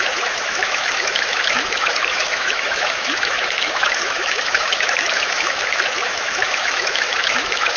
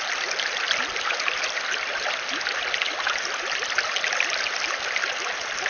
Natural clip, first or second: second